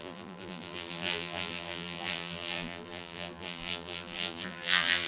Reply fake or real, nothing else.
fake